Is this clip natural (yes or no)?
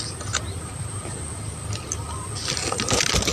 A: yes